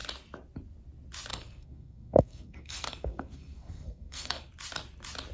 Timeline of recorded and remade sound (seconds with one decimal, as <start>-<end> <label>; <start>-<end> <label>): 0.0-1.3 recorded; 1.3-4.5 remade; 4.5-5.3 recorded